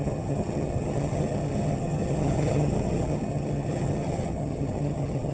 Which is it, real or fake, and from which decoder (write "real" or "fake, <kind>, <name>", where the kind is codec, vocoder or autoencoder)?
fake, vocoder, HiFi-GAN